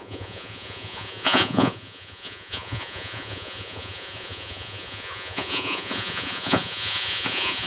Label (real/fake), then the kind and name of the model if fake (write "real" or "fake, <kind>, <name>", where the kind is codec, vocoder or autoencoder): fake, vocoder, Vocos